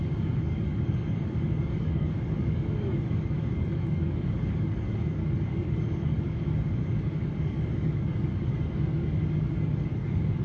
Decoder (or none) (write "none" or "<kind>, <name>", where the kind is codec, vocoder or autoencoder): codec, DAC